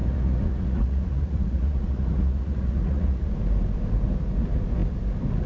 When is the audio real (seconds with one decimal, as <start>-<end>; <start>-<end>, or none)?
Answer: 3.3-5.5